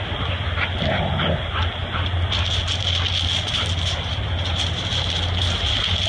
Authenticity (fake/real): real